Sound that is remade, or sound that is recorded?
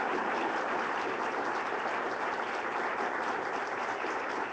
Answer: recorded